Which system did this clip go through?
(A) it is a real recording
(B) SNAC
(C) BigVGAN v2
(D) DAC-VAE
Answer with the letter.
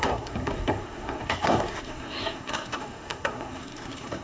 B